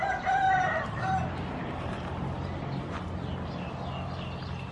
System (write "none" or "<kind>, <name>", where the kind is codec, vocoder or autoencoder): none